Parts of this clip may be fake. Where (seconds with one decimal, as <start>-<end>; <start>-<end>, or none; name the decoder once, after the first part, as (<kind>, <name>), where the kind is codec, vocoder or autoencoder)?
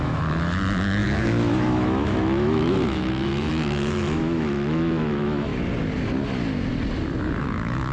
0.0-5.5 (autoencoder, DAC-VAE); 7.4-7.9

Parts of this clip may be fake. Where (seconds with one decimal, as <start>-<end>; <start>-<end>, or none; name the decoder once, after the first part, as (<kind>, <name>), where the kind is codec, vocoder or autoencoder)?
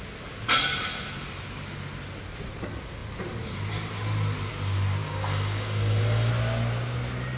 5.0-6.3 (codec, DAC)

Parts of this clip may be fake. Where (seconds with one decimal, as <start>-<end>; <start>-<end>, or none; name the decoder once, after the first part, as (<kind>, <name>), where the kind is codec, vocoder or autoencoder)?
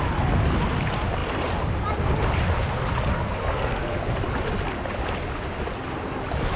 none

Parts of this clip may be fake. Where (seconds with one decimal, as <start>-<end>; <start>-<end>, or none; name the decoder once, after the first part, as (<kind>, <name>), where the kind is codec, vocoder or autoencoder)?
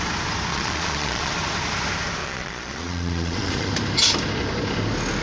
0.5-1.3 (vocoder, Vocos); 2.2-3.7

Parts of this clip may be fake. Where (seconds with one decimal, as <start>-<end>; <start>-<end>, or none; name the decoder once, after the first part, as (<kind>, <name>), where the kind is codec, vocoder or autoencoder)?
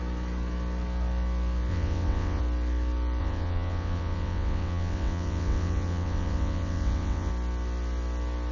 1.7-2.4 (vocoder, WaveNeXt); 3.2-7.3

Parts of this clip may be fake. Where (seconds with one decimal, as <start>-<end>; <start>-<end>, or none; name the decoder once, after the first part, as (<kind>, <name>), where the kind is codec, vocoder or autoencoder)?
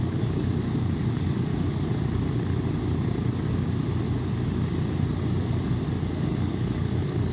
0.0-1.5 (codec, DAC); 5.9-7.3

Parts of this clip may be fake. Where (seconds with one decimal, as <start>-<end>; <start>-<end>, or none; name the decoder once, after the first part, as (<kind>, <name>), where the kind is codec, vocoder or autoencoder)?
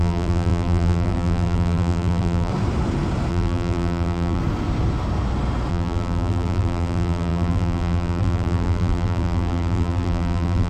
0.0-2.5 (vocoder, BigVGAN v2); 3.3-4.4; 5.7-10.7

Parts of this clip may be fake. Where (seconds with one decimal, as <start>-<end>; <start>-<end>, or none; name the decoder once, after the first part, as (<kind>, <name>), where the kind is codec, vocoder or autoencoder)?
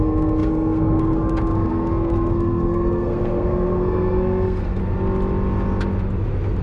0.0-4.8 (codec, SNAC)